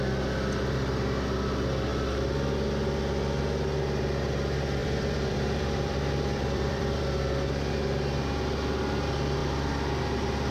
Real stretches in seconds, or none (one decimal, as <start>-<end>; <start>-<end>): 0.0-4.8; 7.0-10.5